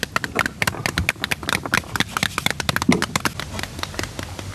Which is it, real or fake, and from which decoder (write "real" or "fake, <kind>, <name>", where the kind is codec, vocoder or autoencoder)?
real